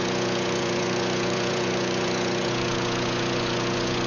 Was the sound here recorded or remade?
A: remade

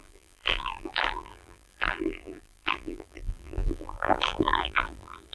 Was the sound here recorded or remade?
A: remade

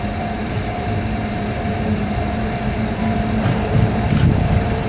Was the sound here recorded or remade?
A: remade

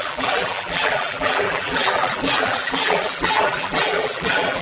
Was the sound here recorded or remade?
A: remade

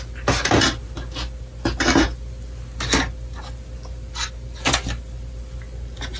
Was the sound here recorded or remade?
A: recorded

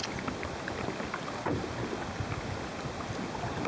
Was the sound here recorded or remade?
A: recorded